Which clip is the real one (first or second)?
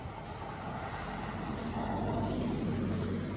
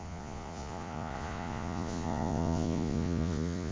first